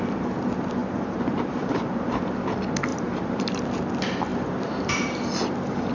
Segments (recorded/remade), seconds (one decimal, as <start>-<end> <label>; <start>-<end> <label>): 0.0-0.8 recorded; 0.8-2.2 remade; 2.2-2.9 recorded; 2.9-3.6 remade; 3.6-4.3 recorded; 4.3-4.9 remade; 4.9-5.9 recorded